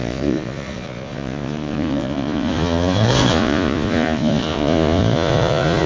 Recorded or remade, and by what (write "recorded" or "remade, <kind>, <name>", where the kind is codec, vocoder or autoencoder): remade, vocoder, Vocos